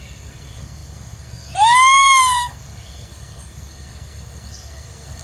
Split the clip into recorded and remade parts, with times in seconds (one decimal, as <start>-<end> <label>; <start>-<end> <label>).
0.0-5.2 remade